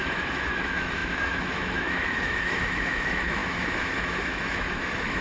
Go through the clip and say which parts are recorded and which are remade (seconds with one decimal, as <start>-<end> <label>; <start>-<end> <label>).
0.0-5.2 remade

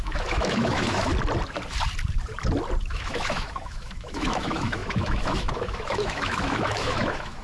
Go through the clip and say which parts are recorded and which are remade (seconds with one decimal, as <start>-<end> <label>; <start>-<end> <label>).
0.0-1.1 remade; 1.1-2.9 recorded; 2.9-7.4 remade